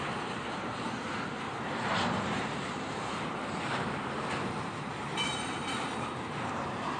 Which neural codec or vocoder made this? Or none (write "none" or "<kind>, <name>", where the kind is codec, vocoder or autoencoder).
vocoder, BigVGAN v2